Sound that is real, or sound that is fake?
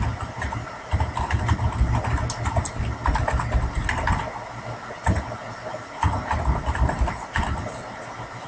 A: real